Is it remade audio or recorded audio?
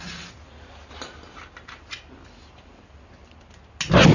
recorded